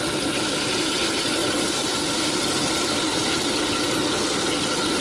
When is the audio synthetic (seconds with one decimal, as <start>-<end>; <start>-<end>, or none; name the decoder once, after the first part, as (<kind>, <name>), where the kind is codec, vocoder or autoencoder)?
none